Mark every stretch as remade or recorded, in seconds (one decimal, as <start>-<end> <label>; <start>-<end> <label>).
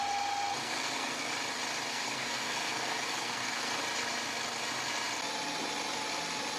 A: 0.0-0.6 recorded; 0.6-1.3 remade; 1.3-1.9 recorded; 1.9-3.8 remade; 3.8-6.6 recorded